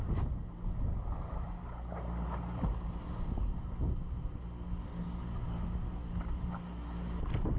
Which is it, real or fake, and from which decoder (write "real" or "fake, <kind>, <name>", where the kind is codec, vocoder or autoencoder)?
real